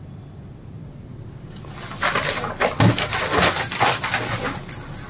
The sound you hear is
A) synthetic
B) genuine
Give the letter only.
B